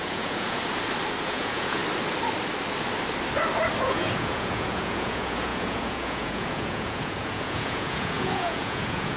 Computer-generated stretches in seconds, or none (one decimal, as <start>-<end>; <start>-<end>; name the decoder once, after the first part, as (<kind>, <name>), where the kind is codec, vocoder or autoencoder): 0.0-0.6 (vocoder, Vocos); 1.2-1.8; 3.8-9.2